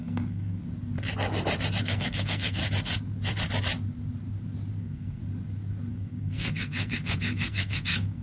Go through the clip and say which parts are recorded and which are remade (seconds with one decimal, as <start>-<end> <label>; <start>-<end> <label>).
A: 0.0-0.6 remade; 0.6-1.8 recorded; 1.8-2.6 remade; 2.6-4.8 recorded; 4.8-5.2 remade; 5.2-5.9 recorded; 5.9-8.2 remade

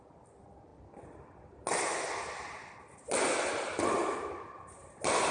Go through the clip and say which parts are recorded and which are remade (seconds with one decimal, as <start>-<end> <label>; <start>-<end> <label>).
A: 0.0-5.3 recorded

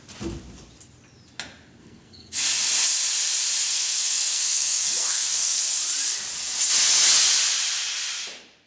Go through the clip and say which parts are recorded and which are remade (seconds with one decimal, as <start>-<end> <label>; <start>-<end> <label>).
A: 0.0-1.8 recorded; 1.8-2.4 remade; 2.4-3.7 recorded; 3.7-5.6 remade; 5.6-8.7 recorded

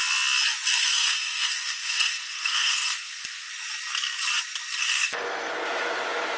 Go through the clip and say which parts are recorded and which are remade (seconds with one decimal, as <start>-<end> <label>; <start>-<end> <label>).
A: 0.0-0.7 recorded; 0.7-3.5 remade; 3.5-4.8 recorded; 4.8-5.5 remade; 5.5-6.4 recorded